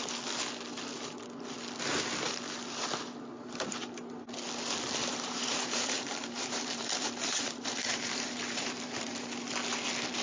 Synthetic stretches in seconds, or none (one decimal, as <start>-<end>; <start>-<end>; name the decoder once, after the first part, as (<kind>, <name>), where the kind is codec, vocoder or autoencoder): 5.0-9.3 (vocoder, BigVGAN v2)